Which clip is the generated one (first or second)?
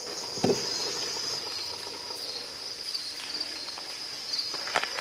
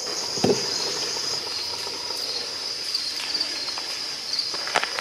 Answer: second